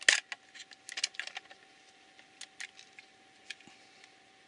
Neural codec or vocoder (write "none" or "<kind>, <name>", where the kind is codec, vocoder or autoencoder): none